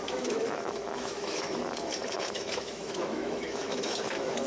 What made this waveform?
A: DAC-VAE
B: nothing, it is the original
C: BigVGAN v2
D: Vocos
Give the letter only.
A